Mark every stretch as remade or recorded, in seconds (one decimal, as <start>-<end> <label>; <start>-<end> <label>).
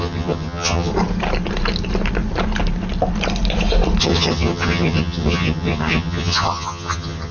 0.0-0.9 remade; 0.9-4.0 recorded; 4.0-7.3 remade